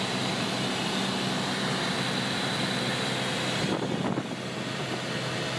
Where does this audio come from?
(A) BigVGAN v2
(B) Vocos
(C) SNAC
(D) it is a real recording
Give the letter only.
D